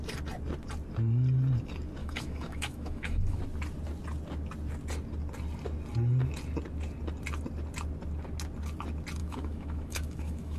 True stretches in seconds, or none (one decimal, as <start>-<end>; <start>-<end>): 0.0-2.0; 3.4-9.2